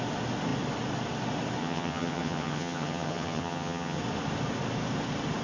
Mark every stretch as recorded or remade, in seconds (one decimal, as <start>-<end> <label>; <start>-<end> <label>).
0.0-1.6 recorded; 1.6-4.0 remade; 4.0-5.4 recorded